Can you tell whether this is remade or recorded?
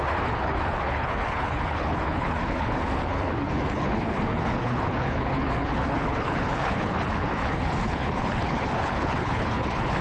remade